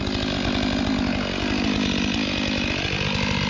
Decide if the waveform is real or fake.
real